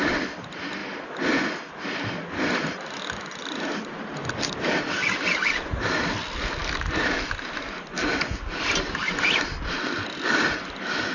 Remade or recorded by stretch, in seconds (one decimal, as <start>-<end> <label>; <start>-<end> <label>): 0.0-6.6 recorded; 6.6-7.2 remade; 7.2-11.1 recorded